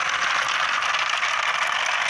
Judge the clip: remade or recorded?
recorded